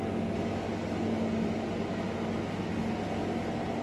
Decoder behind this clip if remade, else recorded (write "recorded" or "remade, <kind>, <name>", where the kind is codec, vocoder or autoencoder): recorded